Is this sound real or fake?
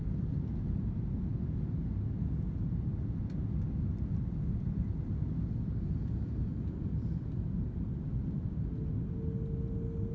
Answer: real